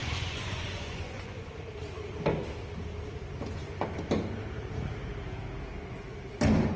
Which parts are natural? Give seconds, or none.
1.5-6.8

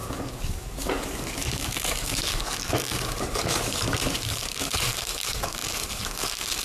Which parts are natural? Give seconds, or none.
none

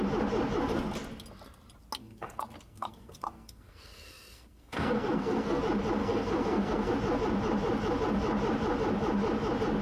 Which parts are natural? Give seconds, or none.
0.0-2.0; 5.6-6.0; 6.9-9.8

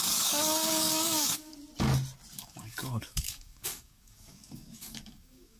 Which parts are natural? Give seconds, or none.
1.5-2.4

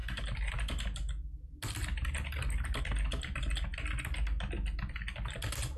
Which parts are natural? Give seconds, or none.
0.0-5.8

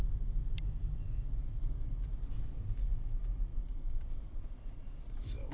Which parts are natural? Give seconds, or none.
0.0-1.4; 2.1-3.5

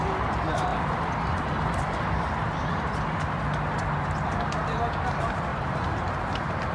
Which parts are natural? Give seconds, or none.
0.0-0.7; 4.5-5.5

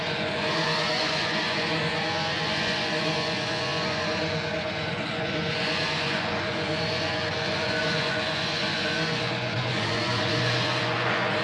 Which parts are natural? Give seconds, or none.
none